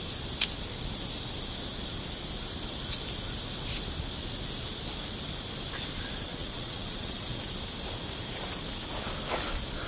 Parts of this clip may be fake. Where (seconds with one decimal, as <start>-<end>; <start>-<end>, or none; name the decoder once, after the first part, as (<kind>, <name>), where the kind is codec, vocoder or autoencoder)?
6.3-7.4 (vocoder, WaveNeXt)